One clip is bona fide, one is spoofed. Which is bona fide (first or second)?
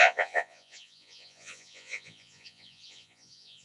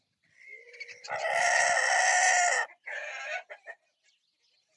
second